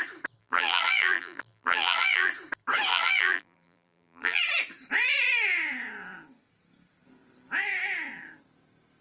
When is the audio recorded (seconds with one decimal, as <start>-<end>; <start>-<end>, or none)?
0.0-0.4; 2.3-2.9; 4.4-9.0